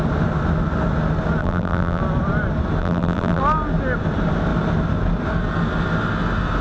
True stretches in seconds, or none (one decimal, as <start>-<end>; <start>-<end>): 0.0-1.4; 2.0-2.8; 3.4-6.6